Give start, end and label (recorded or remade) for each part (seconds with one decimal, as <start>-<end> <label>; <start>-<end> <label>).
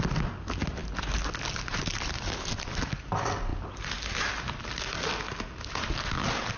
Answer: 0.0-6.6 recorded